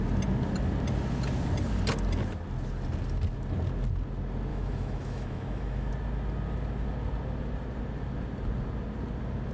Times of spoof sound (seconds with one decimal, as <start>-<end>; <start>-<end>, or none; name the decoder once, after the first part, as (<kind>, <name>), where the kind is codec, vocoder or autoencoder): 4.5-5.9 (autoencoder, DAC-VAE)

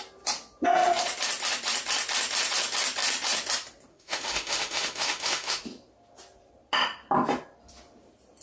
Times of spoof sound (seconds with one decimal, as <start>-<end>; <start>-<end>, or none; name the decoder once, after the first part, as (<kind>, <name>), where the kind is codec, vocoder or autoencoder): 3.9-5.6 (autoencoder, DAC-VAE)

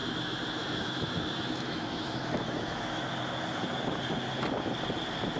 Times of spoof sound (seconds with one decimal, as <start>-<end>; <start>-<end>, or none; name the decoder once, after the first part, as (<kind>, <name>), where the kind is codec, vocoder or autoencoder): 0.0-3.2 (autoencoder, DAC-VAE)

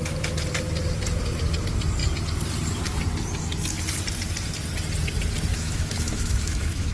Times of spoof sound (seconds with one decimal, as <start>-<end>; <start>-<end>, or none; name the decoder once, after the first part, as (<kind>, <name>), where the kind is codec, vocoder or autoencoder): 5.5-6.9 (autoencoder, DAC-VAE)

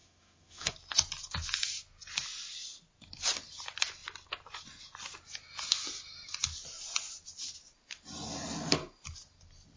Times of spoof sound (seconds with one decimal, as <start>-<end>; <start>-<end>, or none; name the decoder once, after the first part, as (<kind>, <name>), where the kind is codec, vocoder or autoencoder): 0.0-0.7 (autoencoder, DAC-VAE)

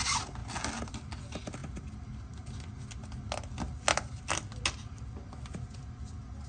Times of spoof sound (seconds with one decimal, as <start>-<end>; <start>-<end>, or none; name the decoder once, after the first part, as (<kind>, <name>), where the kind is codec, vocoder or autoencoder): none

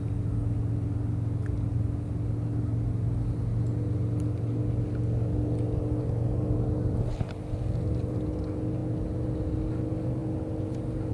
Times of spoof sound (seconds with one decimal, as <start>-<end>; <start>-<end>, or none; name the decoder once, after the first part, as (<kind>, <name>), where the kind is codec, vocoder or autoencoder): none